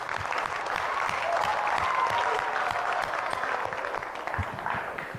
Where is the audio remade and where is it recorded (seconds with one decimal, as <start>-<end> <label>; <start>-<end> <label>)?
0.0-4.4 recorded; 4.4-5.2 remade

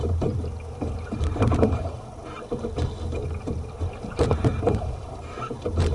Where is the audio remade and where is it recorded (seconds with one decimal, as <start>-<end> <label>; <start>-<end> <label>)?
0.0-2.2 remade; 2.2-3.4 recorded; 3.4-5.9 remade

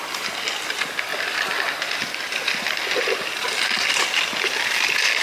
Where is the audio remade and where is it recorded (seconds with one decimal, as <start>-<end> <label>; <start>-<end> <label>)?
0.0-5.2 recorded

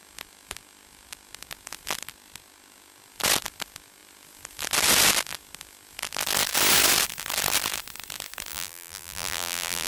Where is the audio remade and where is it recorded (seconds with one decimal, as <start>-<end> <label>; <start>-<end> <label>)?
0.0-8.5 recorded; 8.5-9.9 remade